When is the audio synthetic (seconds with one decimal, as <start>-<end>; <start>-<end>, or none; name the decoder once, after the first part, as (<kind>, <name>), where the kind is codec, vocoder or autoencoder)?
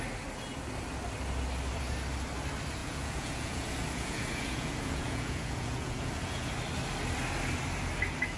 2.8-6.5 (vocoder, Vocos)